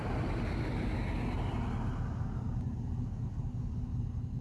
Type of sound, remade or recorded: recorded